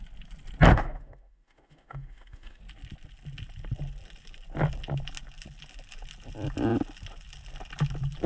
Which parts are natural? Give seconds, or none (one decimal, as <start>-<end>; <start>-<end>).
0.0-0.7; 2.6-8.3